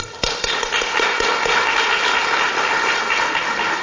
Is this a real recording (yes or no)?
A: yes